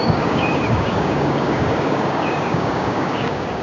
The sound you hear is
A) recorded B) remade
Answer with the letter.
B